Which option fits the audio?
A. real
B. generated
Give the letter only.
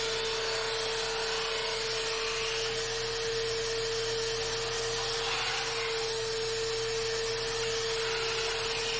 A